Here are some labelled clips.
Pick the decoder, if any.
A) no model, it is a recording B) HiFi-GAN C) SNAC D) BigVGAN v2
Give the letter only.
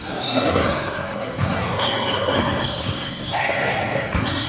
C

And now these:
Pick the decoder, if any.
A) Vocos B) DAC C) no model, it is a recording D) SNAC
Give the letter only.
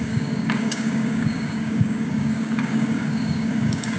B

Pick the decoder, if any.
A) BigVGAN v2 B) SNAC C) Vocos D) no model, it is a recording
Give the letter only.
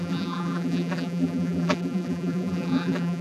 A